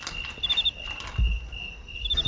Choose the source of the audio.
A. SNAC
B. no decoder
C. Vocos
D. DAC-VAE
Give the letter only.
B